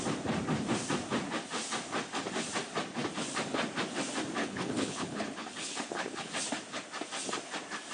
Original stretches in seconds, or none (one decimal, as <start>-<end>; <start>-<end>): 0.0-4.4; 6.3-7.9